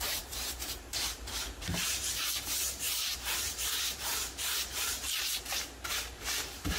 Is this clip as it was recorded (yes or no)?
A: no